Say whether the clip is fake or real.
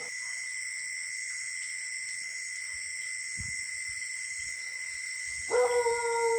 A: real